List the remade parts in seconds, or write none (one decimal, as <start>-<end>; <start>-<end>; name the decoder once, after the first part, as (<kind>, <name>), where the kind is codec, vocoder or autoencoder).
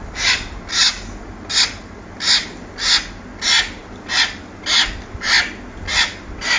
none